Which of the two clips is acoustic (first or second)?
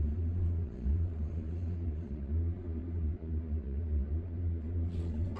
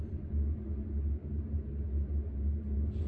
second